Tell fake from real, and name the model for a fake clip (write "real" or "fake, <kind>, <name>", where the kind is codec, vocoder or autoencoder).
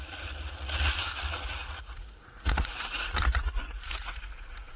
fake, vocoder, Vocos